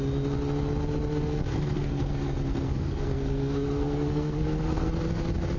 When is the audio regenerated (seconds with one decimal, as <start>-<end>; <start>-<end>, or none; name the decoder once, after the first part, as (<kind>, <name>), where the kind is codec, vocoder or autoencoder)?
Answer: 1.5-4.9 (codec, SNAC)